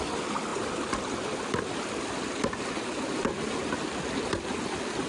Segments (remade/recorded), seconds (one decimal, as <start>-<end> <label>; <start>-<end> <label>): 0.0-5.1 recorded